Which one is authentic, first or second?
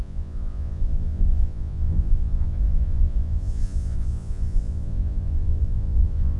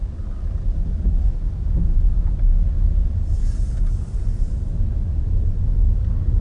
second